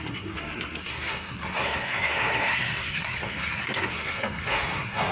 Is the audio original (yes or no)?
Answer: no